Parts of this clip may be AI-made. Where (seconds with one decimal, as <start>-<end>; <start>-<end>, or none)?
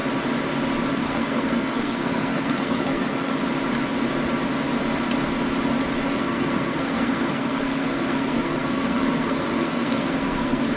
0.9-3.4; 6.1-10.8